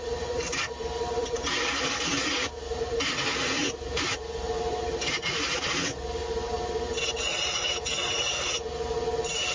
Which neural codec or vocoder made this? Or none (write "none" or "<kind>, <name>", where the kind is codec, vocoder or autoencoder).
vocoder, BigVGAN v2